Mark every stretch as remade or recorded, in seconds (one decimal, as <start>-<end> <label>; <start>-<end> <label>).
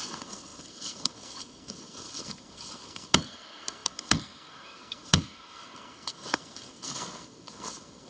0.0-8.1 remade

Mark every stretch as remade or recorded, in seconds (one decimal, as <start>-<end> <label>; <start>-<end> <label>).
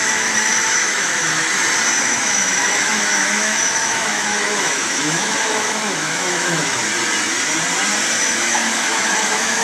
0.0-1.5 remade; 1.5-2.0 recorded; 2.0-6.8 remade; 6.8-8.2 recorded; 8.2-9.6 remade